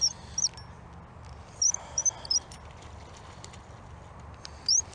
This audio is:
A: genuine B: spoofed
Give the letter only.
A